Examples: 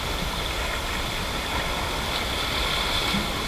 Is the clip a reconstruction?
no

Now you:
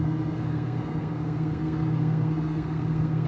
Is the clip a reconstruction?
yes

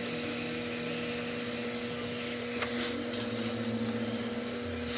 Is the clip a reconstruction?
no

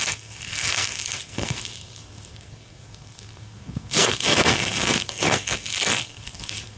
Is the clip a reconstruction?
yes